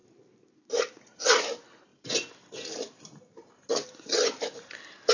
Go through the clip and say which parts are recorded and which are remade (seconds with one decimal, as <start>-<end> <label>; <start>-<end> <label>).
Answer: 0.0-1.9 remade; 1.9-3.0 recorded; 3.0-5.1 remade